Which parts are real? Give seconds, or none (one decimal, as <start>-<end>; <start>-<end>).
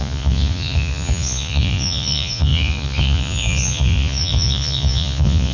none